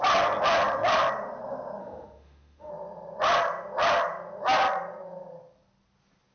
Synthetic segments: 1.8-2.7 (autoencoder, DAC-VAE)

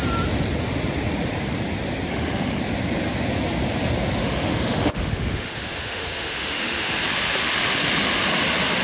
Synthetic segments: 2.1-2.6 (autoencoder, DAC-VAE); 4.2-7.0

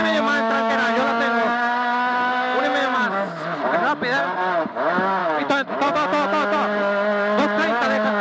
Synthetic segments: 0.0-0.7 (autoencoder, DAC-VAE); 5.2-5.9

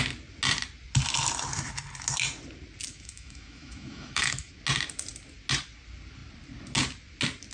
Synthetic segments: 2.9-4.5 (autoencoder, DAC-VAE)

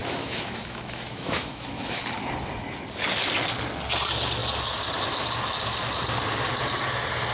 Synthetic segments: 0.0-2.0 (autoencoder, DAC-VAE)